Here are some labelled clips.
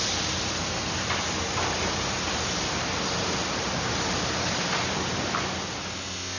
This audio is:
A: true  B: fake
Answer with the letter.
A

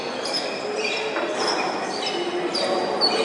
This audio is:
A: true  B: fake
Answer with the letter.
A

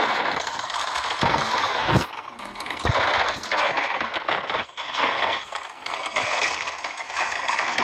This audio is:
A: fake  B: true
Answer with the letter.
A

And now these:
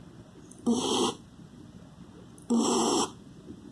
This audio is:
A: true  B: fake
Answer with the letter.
A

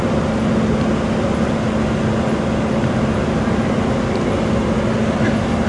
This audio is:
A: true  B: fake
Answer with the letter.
A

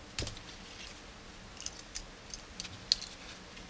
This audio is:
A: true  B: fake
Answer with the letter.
A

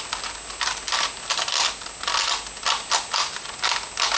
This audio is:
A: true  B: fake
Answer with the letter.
A